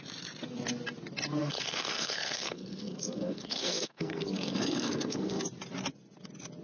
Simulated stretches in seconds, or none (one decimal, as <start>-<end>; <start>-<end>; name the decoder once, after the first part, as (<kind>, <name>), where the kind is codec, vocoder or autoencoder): 1.4-5.4 (codec, SNAC)